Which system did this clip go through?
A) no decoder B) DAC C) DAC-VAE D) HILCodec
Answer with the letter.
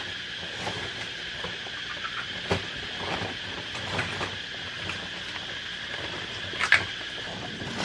A